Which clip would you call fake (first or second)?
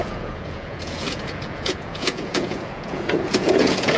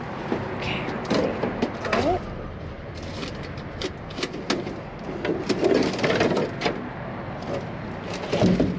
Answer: first